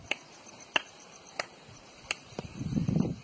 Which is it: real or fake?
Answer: fake